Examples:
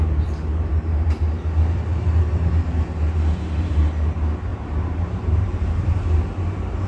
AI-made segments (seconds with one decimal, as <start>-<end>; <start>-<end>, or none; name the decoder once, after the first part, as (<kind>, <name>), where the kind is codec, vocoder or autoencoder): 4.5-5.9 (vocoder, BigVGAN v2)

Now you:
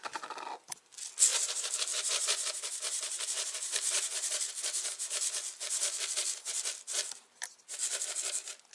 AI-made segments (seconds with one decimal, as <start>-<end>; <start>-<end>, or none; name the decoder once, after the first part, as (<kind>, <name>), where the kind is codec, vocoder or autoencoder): 1.3-4.5 (vocoder, BigVGAN v2)

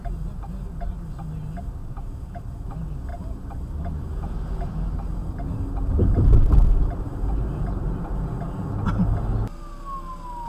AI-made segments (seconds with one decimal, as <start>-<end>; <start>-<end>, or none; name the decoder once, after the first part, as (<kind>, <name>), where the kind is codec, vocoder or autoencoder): 1.8-2.7 (vocoder, BigVGAN v2); 3.1-3.8; 5.2-8.1

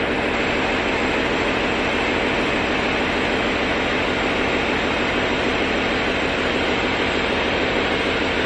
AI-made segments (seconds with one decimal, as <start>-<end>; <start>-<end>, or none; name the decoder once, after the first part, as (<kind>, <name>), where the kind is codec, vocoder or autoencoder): 5.5-8.0 (vocoder, BigVGAN v2)

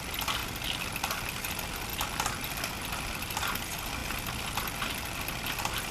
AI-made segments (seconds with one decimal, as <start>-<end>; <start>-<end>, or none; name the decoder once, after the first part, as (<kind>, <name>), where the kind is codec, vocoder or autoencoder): 4.0-4.6 (vocoder, BigVGAN v2)